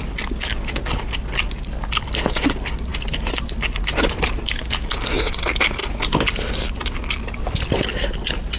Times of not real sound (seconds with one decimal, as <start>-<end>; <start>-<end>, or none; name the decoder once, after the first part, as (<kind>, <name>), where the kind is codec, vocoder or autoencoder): none